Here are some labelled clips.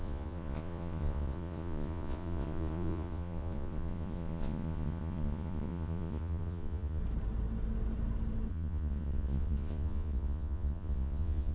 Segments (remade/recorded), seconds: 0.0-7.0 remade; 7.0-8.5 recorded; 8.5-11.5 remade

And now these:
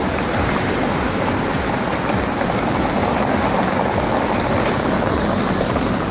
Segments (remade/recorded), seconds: 0.0-6.1 recorded

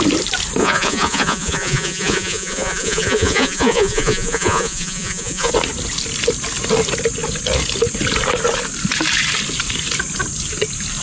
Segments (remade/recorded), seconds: 0.0-0.6 recorded; 0.6-5.5 remade; 5.5-11.0 recorded